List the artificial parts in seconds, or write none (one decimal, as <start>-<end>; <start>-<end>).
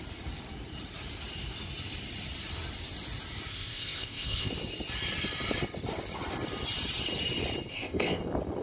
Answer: 3.5-4.5; 7.7-8.2